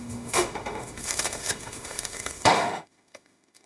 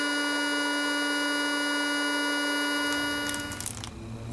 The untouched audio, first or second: second